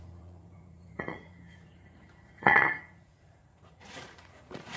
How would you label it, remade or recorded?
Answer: remade